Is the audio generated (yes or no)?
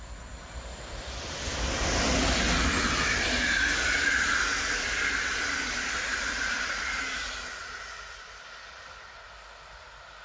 no